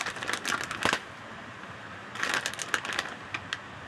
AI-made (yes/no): no